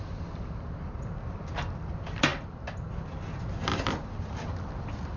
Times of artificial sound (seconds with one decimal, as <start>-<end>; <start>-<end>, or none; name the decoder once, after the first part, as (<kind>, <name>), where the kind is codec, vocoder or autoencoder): none